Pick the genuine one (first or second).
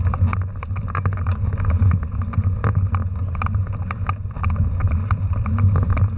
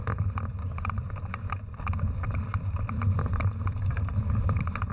first